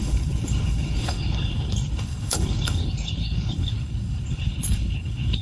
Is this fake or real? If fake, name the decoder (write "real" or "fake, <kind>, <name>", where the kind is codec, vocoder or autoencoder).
fake, codec, HILCodec